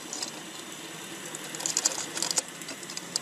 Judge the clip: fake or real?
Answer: real